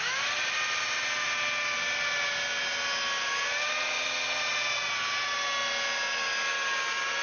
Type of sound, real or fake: real